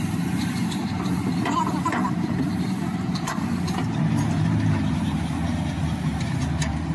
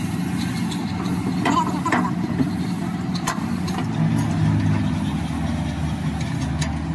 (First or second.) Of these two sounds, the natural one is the second